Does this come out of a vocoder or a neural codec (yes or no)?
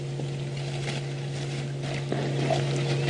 no